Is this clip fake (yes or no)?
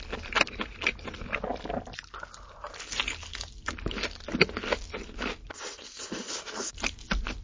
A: no